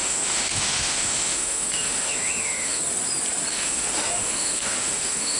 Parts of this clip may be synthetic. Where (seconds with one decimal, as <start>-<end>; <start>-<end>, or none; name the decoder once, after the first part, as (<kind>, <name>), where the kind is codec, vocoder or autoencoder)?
0.0-2.8 (autoencoder, DAC-VAE); 3.5-5.4